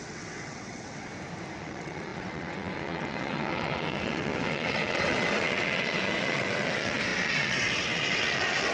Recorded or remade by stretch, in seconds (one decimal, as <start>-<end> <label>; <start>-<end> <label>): 0.0-1.1 remade; 1.1-1.6 recorded; 1.6-8.7 remade